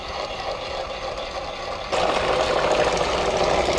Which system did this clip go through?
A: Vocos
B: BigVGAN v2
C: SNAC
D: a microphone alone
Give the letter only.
D